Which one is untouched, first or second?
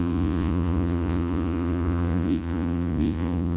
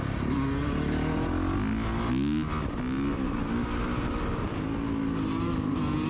second